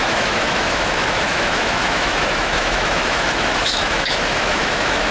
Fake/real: fake